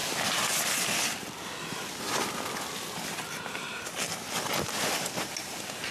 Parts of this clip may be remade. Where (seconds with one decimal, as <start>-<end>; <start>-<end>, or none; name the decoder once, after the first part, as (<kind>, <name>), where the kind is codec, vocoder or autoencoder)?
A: none